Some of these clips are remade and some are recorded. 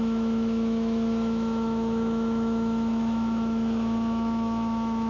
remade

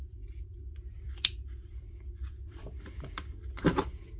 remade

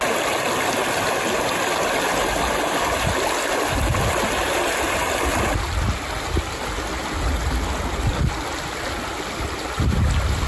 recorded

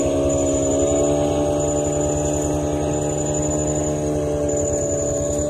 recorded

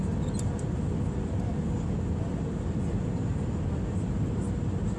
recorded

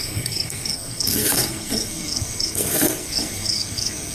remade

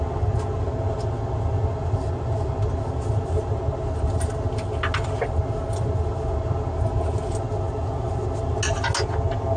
recorded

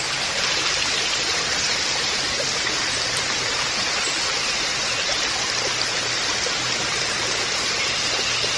remade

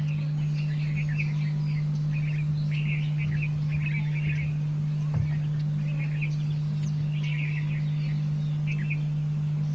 recorded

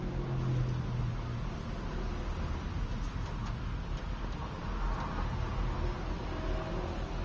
recorded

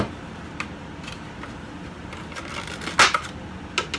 recorded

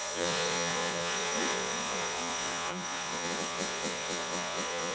remade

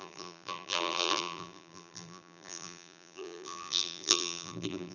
remade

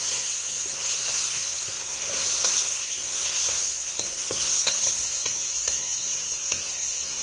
remade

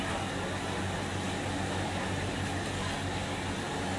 recorded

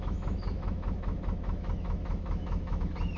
remade